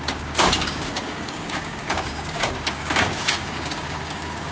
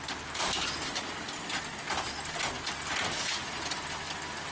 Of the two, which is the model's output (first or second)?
first